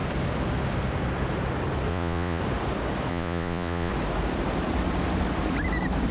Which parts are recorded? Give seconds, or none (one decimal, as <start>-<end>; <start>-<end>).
0.0-1.9; 2.4-3.1; 3.9-6.1